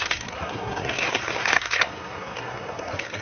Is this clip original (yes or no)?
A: no